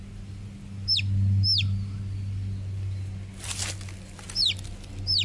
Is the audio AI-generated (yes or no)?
no